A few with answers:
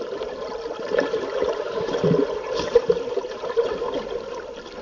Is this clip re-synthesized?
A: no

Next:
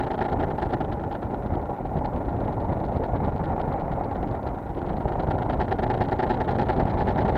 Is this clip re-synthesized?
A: no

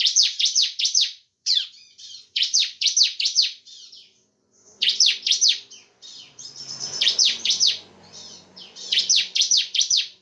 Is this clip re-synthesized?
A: yes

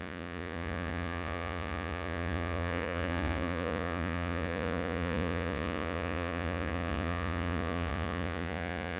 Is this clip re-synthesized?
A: yes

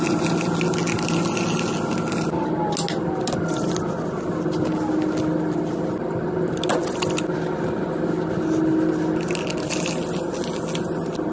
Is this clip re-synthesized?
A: no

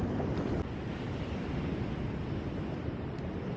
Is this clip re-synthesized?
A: no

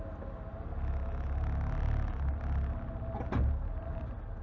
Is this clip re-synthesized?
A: no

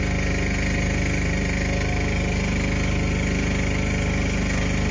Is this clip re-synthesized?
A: no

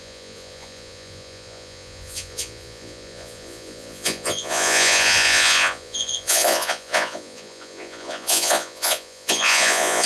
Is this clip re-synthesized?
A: yes